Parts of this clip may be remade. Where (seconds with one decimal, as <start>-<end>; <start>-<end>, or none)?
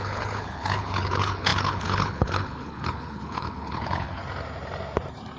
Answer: 0.0-4.2